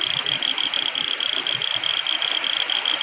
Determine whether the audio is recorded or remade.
recorded